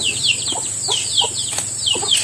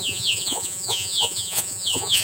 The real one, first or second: first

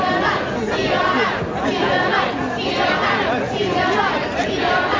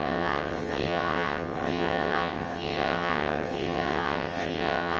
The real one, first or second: first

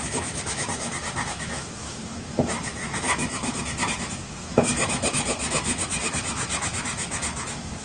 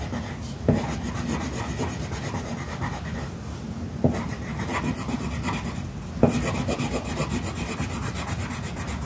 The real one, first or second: second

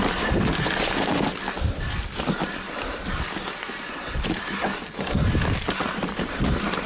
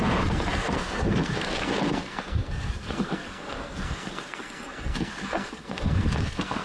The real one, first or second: first